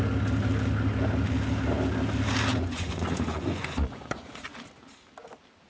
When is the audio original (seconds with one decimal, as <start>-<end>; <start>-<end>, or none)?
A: 0.0-2.5; 4.4-5.7